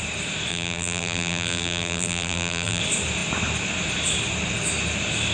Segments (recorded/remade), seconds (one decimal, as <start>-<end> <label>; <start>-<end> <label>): 0.0-0.5 recorded; 0.5-2.8 remade; 2.8-5.3 recorded